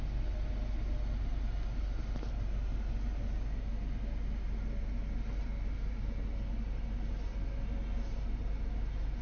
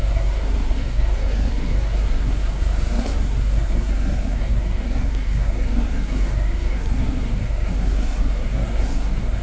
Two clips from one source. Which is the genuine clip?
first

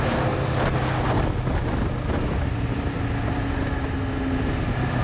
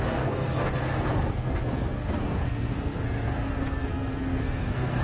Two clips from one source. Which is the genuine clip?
first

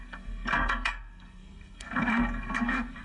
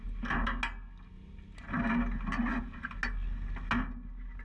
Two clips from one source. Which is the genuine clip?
second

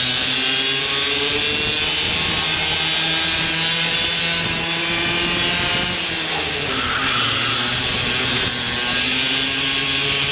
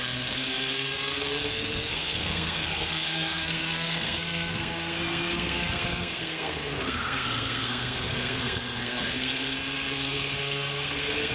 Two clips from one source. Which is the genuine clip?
first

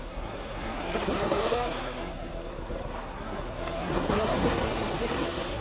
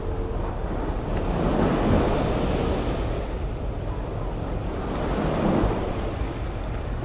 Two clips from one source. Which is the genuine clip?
second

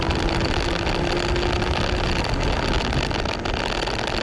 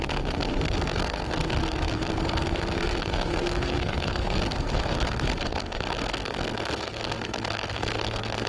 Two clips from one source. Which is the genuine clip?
first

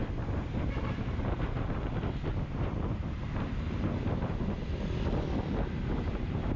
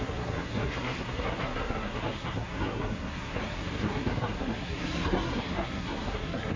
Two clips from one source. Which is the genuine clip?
first